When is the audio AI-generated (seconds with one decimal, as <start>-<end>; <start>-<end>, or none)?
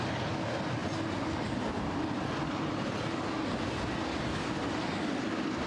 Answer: none